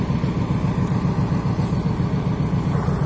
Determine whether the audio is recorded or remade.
recorded